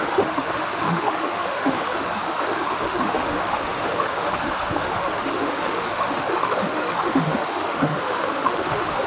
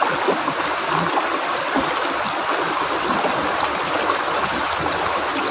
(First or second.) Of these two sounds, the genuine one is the second